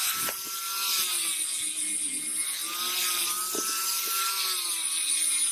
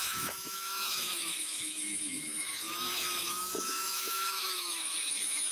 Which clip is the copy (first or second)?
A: second